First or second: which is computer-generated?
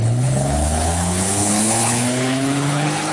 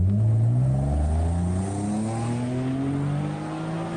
first